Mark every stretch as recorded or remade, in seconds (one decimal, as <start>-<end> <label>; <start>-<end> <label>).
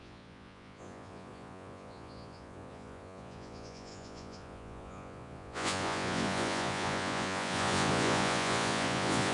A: 0.0-9.3 remade